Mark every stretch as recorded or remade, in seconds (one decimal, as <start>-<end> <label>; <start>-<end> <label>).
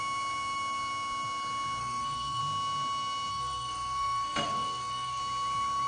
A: 0.0-1.8 recorded; 1.8-2.4 remade; 2.4-3.3 recorded; 3.3-5.2 remade; 5.2-5.9 recorded